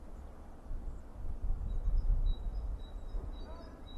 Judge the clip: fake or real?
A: fake